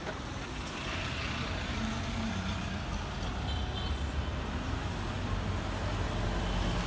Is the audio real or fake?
real